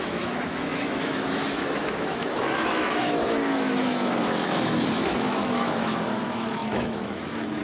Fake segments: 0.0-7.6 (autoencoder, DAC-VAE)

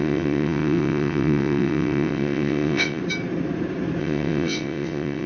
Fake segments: 0.0-3.0 (vocoder, WaveNeXt); 4.0-5.3

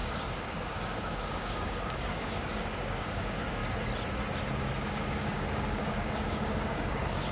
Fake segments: 0.0-3.6 (codec, DAC); 4.6-7.3

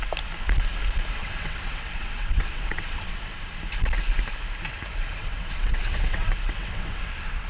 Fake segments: 1.2-3.4 (vocoder, WaveNeXt); 5.2-7.5

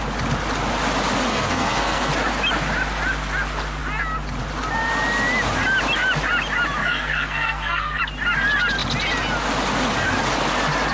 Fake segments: 1.3-2.1 (codec, SNAC); 6.8-8.0

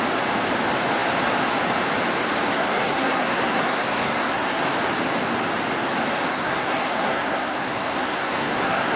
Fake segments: 2.5-4.6 (codec, SNAC); 6.3-9.0

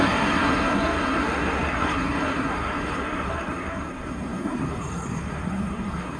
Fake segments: 0.0-6.2 (codec, SNAC)